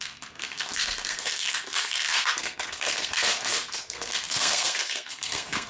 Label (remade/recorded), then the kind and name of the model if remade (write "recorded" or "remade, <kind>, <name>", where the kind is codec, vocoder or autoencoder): remade, codec, SNAC